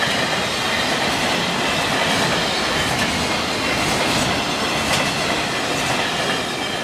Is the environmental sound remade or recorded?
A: recorded